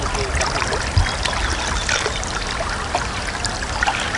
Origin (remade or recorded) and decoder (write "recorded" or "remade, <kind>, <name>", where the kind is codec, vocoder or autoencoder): recorded